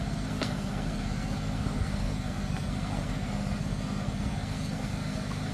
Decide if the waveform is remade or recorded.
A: remade